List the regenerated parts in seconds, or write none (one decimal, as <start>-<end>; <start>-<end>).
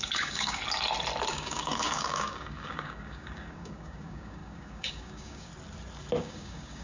0.0-0.6; 1.3-5.5; 6.2-6.8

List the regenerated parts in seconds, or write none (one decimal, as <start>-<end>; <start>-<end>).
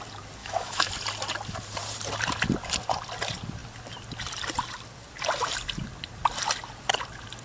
0.4-0.9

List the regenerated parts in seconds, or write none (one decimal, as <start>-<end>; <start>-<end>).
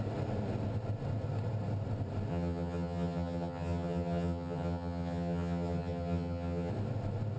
2.3-6.7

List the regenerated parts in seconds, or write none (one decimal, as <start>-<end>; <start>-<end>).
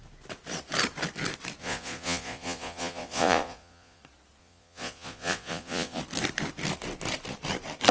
1.6-4.0; 4.4-6.0